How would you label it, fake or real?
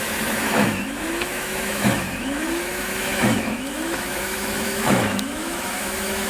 fake